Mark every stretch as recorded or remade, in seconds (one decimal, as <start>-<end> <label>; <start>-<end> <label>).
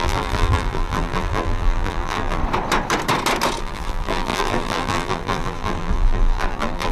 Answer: 0.0-2.4 remade; 2.4-3.6 recorded; 3.6-6.9 remade